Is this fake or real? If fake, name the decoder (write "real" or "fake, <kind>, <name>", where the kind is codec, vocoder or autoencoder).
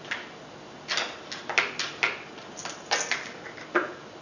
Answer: real